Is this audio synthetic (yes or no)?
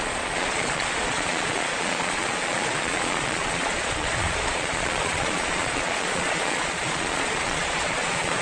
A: yes